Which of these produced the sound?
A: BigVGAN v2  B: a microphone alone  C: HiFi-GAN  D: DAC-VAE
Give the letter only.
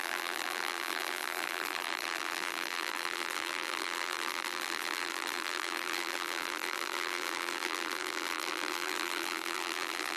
A